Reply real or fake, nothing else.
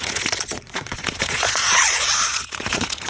fake